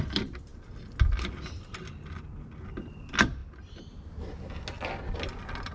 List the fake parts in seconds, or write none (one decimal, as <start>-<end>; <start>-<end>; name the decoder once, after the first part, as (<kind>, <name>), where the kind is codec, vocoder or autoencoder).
none